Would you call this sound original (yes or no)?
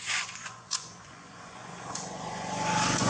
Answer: no